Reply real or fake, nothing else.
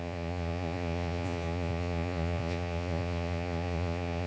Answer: fake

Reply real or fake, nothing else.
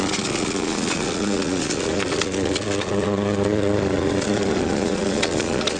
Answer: fake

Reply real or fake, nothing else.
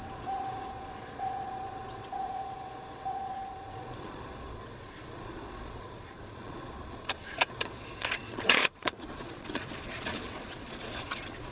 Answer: fake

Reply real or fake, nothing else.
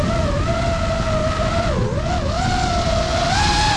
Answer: real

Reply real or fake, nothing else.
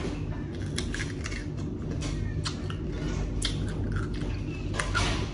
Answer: real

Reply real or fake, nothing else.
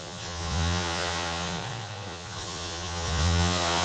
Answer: fake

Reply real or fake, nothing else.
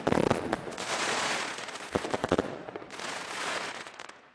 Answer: fake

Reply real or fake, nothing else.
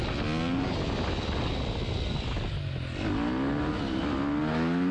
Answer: real